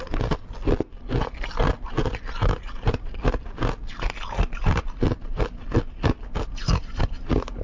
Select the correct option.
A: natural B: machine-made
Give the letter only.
A